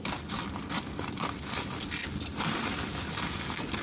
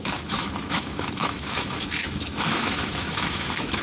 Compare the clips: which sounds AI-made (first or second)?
second